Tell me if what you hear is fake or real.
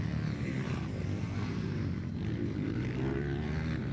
real